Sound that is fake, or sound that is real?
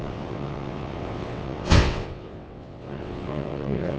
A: fake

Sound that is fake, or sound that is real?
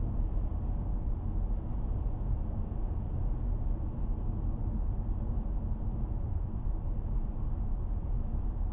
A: real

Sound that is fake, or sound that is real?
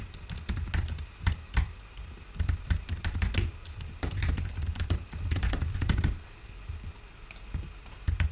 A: real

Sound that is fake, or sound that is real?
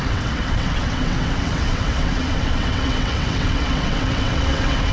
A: fake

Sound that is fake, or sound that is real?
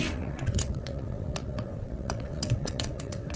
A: fake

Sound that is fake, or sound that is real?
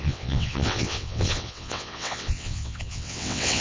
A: fake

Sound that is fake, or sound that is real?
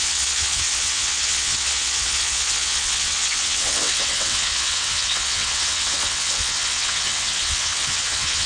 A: fake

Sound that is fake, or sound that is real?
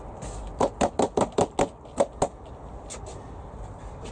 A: real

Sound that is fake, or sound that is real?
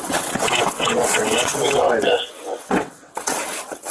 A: fake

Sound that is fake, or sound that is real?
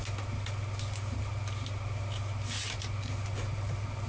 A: real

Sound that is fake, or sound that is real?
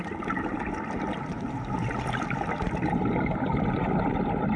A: real